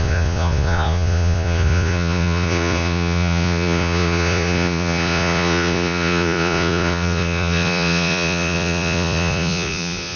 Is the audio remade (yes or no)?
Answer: yes